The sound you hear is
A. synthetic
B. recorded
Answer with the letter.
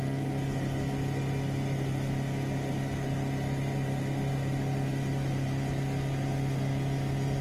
B